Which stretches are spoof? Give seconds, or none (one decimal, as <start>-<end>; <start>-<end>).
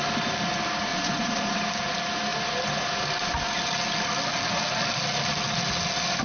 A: 0.9-1.6